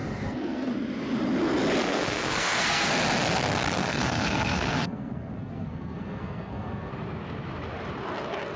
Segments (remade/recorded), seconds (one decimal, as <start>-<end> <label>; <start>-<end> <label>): 0.0-0.7 remade; 0.7-1.8 recorded; 1.8-2.9 remade; 2.9-3.8 recorded; 3.8-6.9 remade; 6.9-8.6 recorded